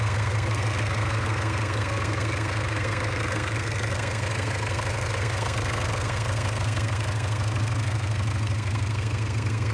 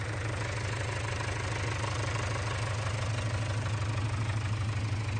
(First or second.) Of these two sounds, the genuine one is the second